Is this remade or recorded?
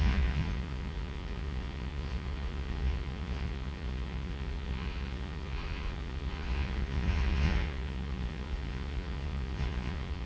remade